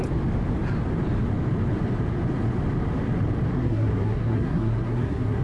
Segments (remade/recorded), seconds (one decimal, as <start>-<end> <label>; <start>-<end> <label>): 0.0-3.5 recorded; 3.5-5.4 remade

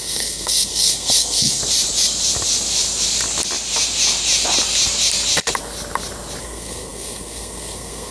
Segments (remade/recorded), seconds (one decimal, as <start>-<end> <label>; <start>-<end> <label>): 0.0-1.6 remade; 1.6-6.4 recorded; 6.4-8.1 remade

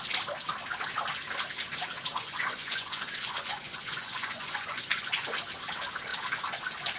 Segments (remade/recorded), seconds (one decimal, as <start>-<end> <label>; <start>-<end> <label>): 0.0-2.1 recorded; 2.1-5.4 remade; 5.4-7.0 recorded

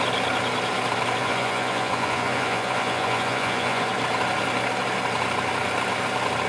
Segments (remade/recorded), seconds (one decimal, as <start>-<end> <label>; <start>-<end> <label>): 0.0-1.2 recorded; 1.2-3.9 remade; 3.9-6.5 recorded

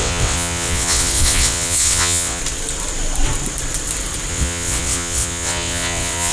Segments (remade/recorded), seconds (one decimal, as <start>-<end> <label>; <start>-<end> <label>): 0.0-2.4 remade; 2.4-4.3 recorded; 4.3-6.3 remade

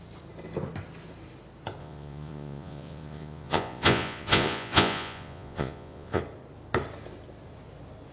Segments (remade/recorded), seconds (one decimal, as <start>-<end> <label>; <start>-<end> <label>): 0.0-1.8 recorded; 1.8-6.2 remade; 6.2-8.1 recorded